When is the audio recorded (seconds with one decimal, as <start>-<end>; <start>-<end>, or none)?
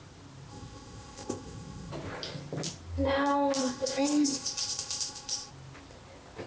0.0-0.5; 1.9-3.6; 5.5-6.5